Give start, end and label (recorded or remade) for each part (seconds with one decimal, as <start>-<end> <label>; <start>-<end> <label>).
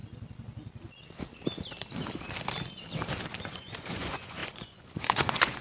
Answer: 0.0-3.4 recorded; 3.4-5.6 remade